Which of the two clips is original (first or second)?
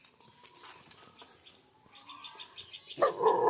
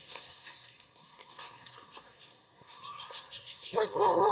first